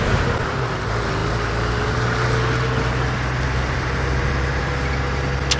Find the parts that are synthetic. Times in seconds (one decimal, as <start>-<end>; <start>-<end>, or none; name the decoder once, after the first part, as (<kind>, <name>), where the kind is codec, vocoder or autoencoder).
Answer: none